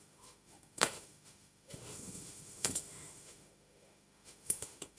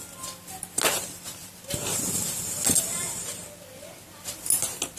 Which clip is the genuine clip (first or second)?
second